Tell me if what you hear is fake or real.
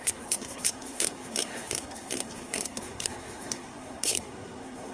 fake